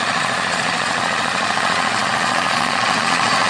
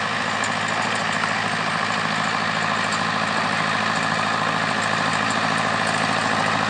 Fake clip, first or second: first